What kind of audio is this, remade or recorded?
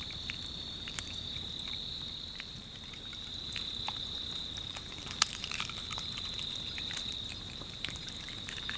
remade